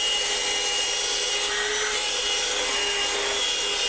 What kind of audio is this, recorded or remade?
recorded